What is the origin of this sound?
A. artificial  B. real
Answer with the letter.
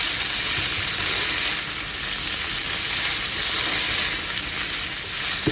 B